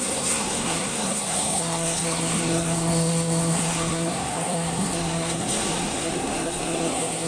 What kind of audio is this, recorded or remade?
remade